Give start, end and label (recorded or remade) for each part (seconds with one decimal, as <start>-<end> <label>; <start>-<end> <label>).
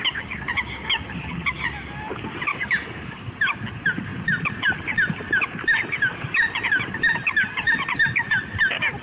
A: 0.0-2.5 recorded; 2.5-3.3 remade; 3.3-9.0 recorded